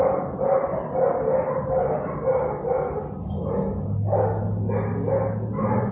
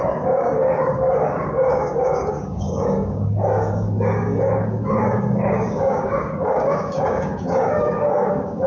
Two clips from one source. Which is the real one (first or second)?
first